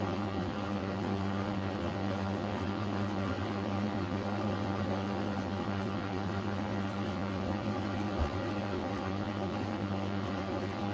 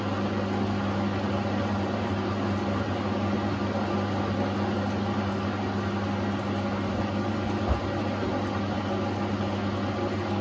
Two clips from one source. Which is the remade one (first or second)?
first